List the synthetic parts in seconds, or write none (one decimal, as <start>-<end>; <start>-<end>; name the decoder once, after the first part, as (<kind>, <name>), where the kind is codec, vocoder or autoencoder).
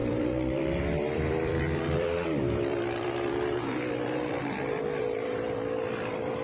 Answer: 0.0-6.4 (vocoder, BigVGAN v2)